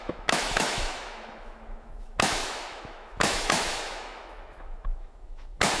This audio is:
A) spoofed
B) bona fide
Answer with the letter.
A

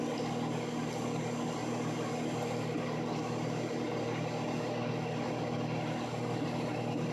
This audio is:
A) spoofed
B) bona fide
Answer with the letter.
B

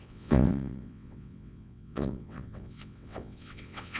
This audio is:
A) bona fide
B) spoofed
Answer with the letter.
B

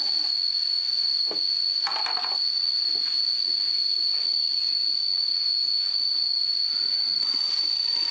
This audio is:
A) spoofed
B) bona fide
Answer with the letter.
B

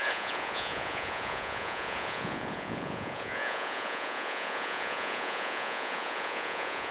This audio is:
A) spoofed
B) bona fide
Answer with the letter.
A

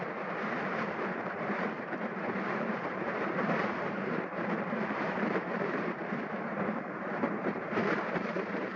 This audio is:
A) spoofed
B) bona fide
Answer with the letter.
A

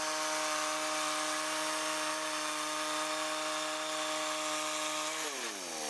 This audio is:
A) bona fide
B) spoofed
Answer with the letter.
A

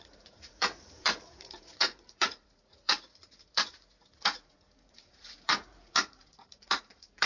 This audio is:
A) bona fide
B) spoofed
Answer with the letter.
B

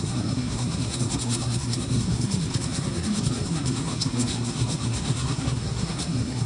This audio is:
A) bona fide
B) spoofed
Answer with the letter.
B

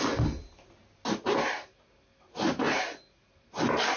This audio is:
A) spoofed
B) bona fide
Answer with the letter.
B